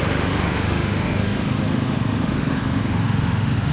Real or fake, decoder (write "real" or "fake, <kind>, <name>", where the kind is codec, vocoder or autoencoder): fake, autoencoder, DAC-VAE